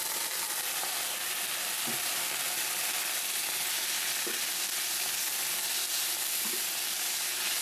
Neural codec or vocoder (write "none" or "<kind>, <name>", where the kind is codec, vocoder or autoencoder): none